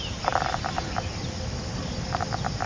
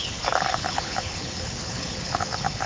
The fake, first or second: second